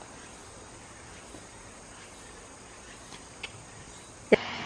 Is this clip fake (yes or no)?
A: no